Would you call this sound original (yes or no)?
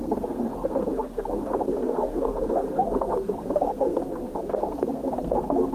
no